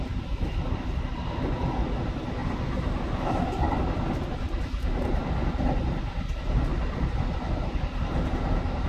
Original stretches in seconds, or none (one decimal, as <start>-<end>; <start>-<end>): 0.0-8.9